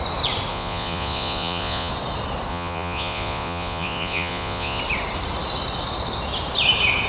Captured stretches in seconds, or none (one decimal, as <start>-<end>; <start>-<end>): 0.0-0.5; 1.9-2.5; 4.8-7.1